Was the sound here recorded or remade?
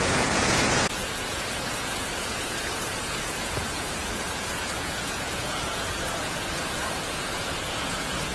remade